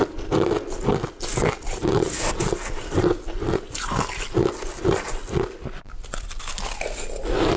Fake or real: real